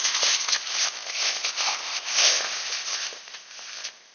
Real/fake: fake